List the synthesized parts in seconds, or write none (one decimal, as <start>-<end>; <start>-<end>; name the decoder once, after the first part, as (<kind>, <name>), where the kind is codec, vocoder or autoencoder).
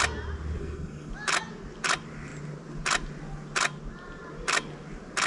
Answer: 0.6-1.1 (codec, SNAC)